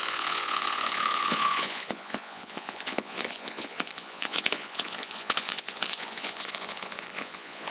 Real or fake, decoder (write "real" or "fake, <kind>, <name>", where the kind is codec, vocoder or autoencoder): fake, vocoder, Vocos